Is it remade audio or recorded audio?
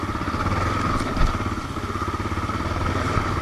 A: remade